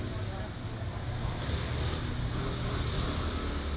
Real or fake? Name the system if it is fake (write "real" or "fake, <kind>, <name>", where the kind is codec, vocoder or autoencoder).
real